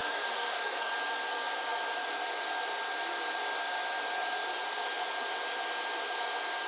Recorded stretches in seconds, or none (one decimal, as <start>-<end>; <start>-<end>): 0.9-6.7